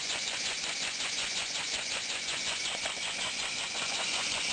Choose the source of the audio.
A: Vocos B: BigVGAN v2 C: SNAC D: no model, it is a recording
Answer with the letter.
A